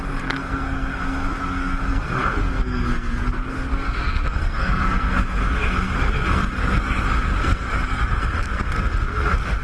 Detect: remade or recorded remade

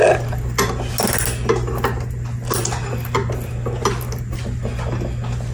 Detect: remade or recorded recorded